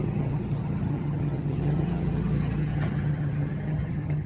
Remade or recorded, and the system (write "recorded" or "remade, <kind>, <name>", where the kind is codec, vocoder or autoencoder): remade, vocoder, HiFi-GAN